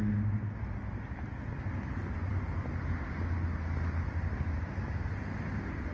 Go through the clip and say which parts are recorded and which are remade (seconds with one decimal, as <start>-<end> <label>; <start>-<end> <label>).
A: 0.0-5.9 recorded